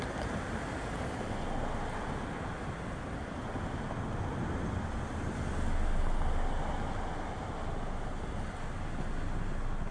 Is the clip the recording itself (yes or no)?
yes